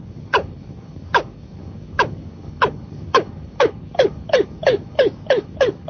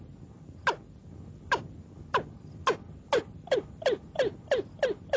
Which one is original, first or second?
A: second